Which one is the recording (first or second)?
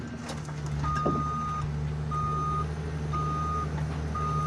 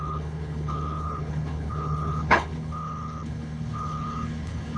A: first